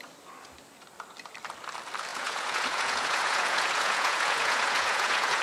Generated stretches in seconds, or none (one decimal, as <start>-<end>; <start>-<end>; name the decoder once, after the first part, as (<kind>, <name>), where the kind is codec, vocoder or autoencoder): 2.1-5.4 (vocoder, Vocos)